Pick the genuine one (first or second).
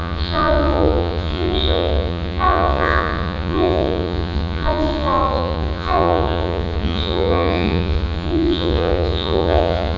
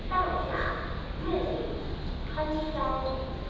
second